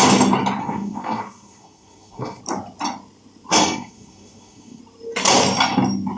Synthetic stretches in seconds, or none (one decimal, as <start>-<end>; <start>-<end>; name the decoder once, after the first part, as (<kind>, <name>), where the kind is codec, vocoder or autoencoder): 0.6-2.4 (codec, SNAC); 3.5-4.8